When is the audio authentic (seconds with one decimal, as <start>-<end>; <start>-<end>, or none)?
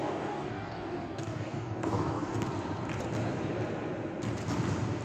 2.4-5.0